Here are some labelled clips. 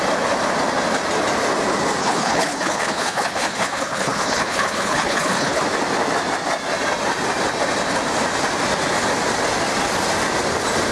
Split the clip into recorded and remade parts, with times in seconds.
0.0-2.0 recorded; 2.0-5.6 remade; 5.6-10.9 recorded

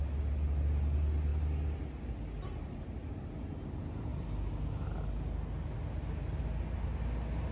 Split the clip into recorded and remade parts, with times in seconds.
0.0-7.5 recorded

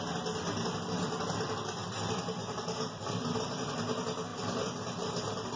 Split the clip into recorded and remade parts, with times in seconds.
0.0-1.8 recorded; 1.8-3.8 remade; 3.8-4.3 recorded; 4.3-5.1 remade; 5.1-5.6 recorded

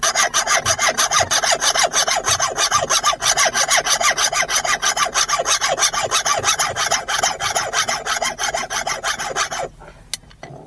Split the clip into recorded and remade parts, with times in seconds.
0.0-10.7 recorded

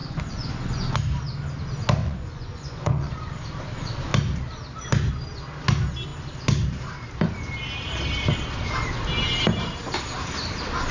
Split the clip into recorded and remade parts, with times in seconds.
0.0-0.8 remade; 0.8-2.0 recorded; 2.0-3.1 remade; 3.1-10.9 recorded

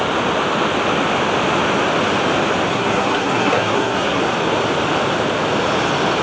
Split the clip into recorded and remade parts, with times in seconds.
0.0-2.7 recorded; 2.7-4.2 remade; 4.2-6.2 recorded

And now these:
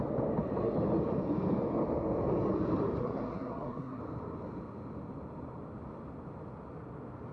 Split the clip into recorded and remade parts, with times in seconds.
0.0-3.0 recorded; 3.0-4.0 remade; 4.0-7.3 recorded

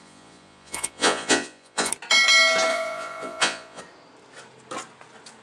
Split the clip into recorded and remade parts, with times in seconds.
0.0-1.9 remade; 1.9-2.7 recorded; 2.7-3.8 remade; 3.8-5.4 recorded